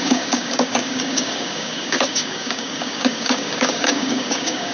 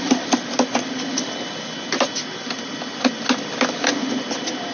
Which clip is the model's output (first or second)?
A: first